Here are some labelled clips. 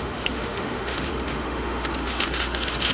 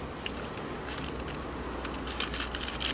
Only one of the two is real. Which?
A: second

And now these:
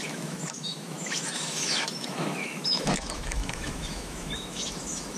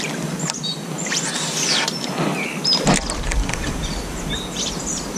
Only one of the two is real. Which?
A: second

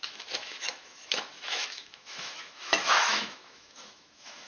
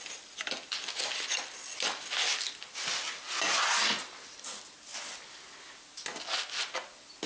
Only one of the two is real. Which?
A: second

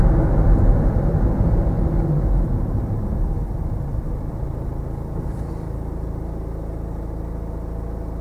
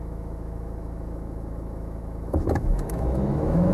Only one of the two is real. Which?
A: first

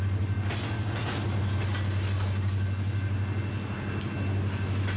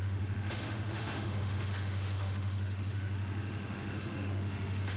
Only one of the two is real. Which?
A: first